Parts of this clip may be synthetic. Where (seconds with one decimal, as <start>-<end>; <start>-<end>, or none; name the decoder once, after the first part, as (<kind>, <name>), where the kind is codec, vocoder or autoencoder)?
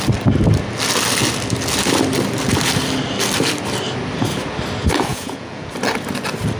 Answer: 5.1-5.7 (vocoder, Vocos)